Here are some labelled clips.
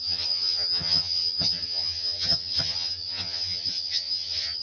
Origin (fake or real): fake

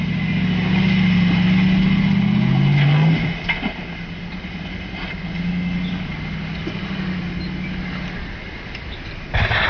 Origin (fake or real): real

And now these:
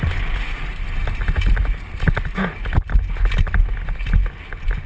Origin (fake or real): real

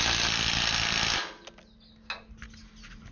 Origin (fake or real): real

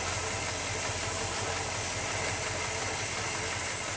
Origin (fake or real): real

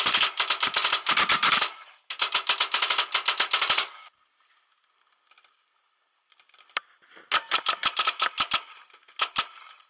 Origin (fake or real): real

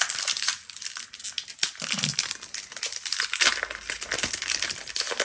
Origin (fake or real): real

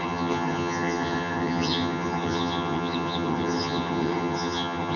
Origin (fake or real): fake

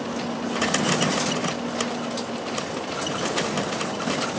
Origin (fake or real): real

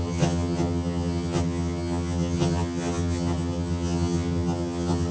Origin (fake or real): fake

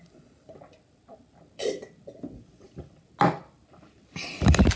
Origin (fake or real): real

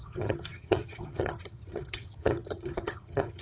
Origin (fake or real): fake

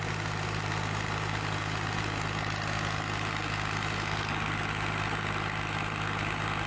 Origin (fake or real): real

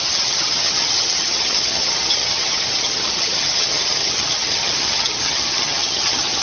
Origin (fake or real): fake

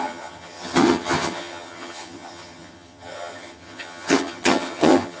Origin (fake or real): fake